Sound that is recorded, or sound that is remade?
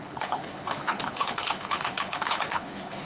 remade